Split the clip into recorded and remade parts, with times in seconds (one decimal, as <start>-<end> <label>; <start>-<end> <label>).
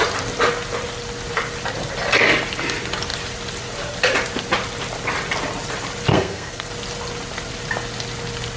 0.0-6.1 recorded; 6.1-6.7 remade; 6.7-8.6 recorded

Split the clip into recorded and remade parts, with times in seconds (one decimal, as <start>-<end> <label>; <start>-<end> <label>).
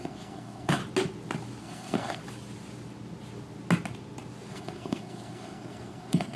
0.0-0.8 remade; 0.8-1.6 recorded; 1.6-2.2 remade; 2.2-4.5 recorded; 4.5-6.4 remade